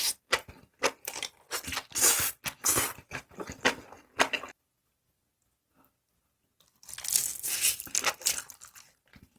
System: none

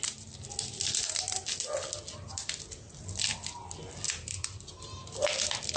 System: none